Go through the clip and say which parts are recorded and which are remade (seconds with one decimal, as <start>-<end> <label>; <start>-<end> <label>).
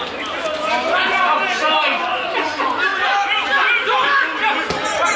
0.0-5.2 recorded